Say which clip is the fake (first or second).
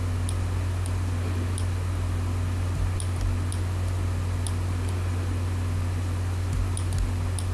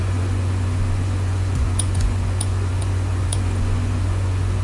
second